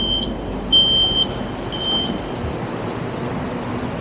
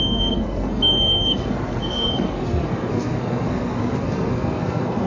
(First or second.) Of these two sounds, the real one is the first